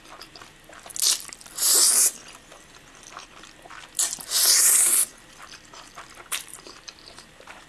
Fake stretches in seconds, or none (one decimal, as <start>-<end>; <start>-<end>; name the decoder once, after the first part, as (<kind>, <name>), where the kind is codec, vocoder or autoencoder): 6.3-7.7 (vocoder, BigVGAN v2)